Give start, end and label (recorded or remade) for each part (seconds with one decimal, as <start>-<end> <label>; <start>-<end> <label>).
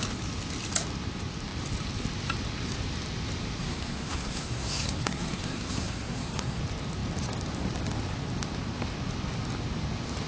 0.0-3.6 recorded; 3.6-6.6 remade; 6.6-10.3 recorded